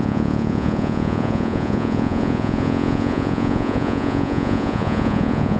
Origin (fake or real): fake